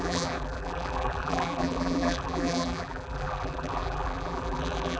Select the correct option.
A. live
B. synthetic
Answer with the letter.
B